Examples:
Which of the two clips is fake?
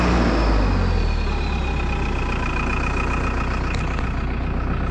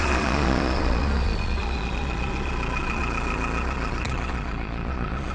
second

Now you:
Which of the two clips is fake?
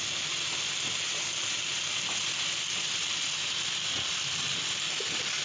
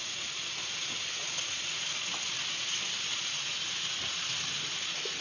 second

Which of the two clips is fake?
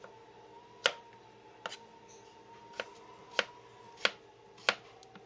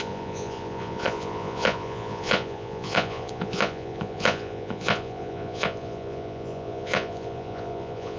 second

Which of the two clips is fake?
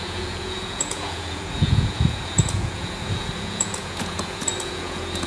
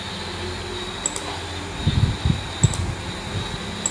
first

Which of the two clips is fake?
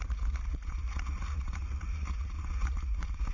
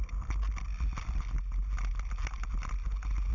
first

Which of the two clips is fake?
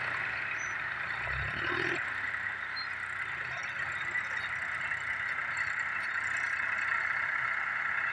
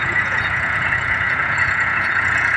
second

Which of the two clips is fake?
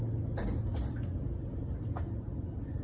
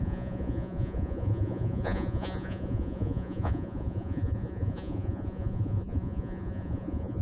second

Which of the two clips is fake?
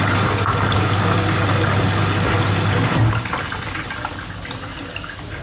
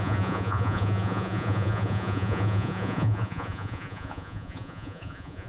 second